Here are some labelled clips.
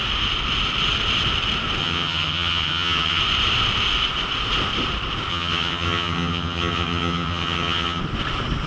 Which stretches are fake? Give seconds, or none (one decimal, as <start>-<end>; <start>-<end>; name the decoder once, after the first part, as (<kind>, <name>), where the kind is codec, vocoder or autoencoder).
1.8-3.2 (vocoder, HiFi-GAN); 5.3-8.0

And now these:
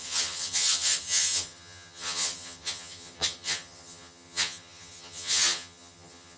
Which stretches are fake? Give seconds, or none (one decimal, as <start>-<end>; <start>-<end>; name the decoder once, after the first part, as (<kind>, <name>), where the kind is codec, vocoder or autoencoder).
0.0-6.4 (vocoder, HiFi-GAN)

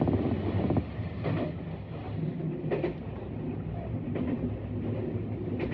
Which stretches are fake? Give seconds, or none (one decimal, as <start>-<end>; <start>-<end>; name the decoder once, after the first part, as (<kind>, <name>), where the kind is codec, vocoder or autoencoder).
none

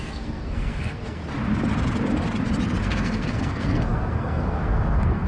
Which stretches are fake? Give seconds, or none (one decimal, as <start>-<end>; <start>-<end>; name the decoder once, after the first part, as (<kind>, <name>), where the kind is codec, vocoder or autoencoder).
0.0-1.2 (codec, SNAC); 2.8-5.3